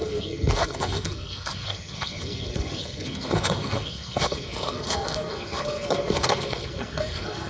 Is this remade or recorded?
remade